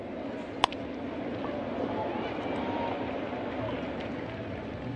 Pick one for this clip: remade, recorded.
recorded